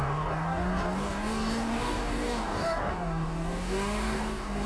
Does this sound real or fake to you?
fake